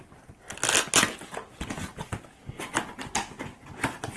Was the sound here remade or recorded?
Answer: recorded